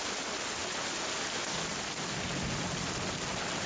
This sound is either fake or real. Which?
real